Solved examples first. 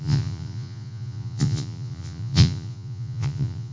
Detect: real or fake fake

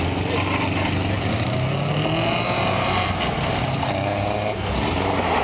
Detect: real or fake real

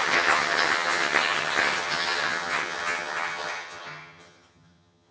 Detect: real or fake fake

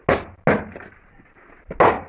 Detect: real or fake real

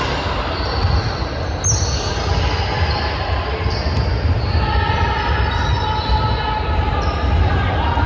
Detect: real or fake real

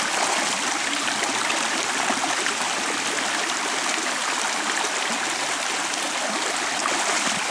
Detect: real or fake real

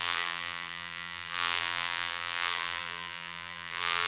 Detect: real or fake fake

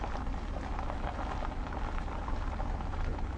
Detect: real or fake real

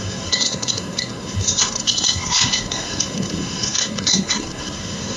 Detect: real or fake fake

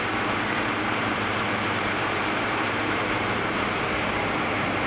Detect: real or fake fake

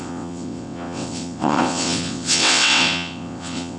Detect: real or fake fake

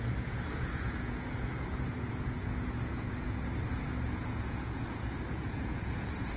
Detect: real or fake fake